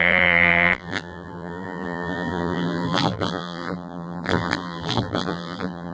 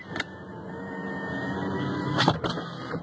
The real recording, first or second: second